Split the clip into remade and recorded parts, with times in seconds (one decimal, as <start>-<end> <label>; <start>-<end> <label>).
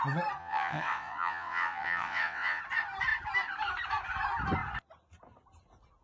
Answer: 0.0-0.4 recorded; 0.4-2.6 remade; 2.6-6.0 recorded